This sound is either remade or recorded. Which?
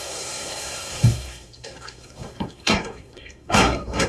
remade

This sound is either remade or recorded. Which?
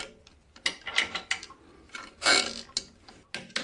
recorded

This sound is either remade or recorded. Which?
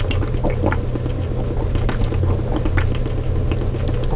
recorded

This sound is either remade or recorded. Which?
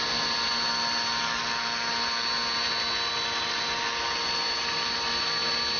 recorded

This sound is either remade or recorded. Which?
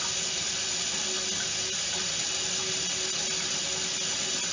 recorded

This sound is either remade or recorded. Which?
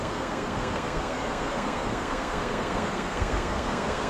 remade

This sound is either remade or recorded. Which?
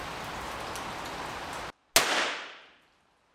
recorded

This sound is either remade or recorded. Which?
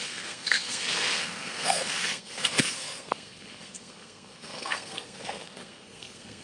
remade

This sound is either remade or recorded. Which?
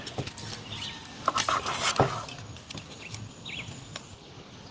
recorded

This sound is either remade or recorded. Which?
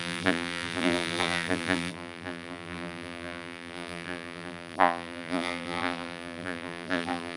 remade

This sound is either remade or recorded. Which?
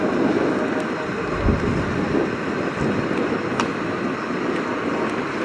recorded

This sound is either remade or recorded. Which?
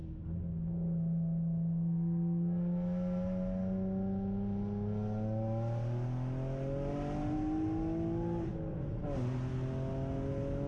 recorded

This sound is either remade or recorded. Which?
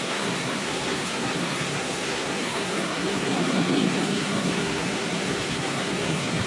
remade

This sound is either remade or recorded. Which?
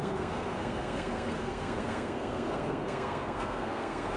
remade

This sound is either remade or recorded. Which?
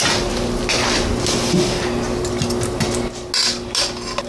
recorded